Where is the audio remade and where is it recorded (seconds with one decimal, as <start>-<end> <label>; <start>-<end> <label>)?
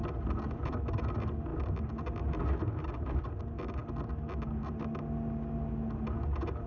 0.0-6.7 recorded